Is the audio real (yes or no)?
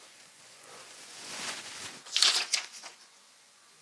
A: no